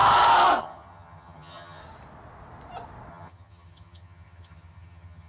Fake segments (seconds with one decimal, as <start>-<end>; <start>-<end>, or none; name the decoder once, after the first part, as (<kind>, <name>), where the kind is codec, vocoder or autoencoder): 0.6-1.8 (vocoder, HiFi-GAN); 3.1-5.3